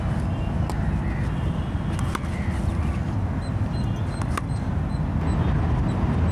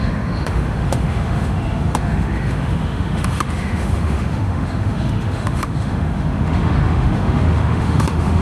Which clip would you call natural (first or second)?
first